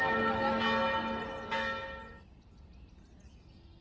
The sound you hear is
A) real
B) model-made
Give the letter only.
A